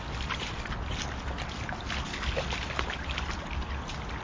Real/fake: real